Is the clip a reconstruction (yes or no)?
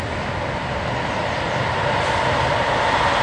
no